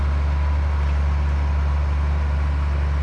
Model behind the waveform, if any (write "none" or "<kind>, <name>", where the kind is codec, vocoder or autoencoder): none